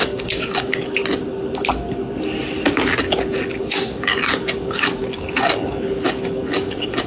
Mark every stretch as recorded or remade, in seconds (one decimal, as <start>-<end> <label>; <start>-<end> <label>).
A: 0.0-1.0 remade; 1.0-3.6 recorded; 3.6-7.1 remade